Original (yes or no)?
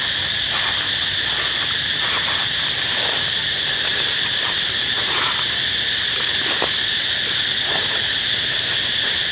yes